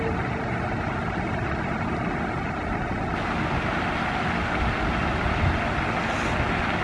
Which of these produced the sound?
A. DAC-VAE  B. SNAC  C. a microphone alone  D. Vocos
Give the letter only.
C